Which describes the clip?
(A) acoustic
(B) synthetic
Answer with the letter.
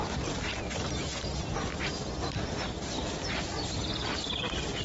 A